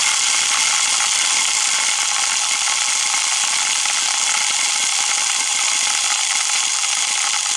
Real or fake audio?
real